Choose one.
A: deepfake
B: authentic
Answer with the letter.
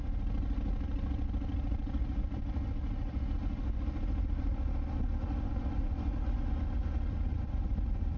B